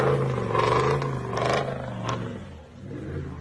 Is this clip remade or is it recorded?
recorded